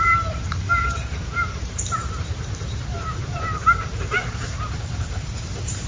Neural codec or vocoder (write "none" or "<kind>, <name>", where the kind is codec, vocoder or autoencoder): vocoder, BigVGAN v2